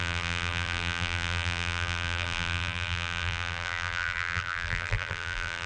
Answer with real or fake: fake